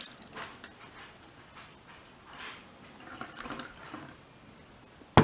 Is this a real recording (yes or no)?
yes